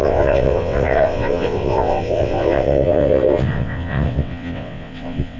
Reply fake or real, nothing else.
fake